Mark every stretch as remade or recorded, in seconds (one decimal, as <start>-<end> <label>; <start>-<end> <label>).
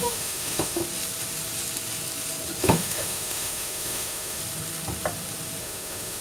0.0-0.8 remade; 0.8-2.6 recorded; 2.6-4.4 remade; 4.4-5.6 recorded; 5.6-6.2 remade